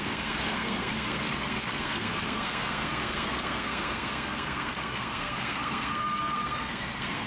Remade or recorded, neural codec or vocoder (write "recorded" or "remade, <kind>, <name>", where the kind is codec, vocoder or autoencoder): remade, codec, SNAC